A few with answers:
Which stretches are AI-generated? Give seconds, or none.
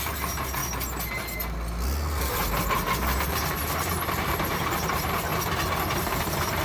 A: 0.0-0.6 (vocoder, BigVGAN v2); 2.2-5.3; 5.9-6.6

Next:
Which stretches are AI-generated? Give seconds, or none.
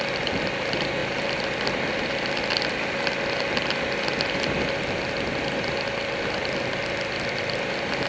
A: none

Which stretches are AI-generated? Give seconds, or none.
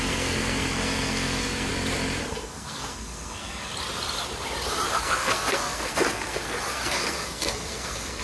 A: 0.0-1.7 (codec, SNAC); 2.3-3.7; 4.9-8.2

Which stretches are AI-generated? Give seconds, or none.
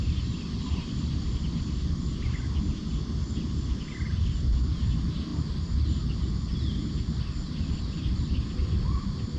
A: none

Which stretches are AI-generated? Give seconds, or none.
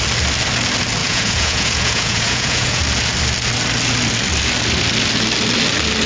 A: 1.0-2.8 (vocoder, Vocos)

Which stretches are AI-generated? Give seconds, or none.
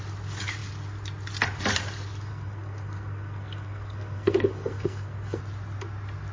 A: 2.3-5.4 (codec, SNAC)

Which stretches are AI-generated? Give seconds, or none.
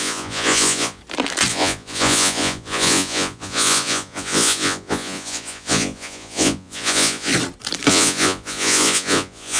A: 0.0-1.0 (vocoder, Vocos); 1.5-7.3; 7.9-9.6